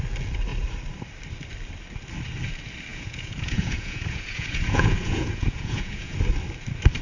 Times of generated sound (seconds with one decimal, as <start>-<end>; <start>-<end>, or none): 2.9-6.2